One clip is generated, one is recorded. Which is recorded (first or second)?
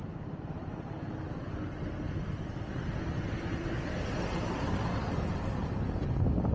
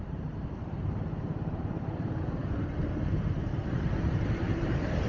first